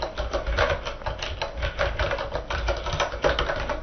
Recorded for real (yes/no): yes